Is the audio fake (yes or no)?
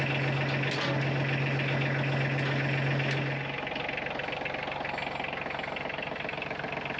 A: no